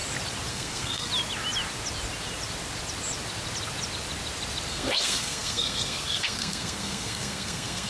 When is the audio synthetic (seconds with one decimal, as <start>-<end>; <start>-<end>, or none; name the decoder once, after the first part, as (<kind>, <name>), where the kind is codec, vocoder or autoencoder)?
0.5-1.1 (codec, SNAC); 4.7-7.9